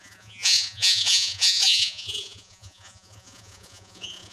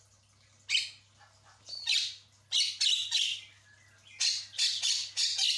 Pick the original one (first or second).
second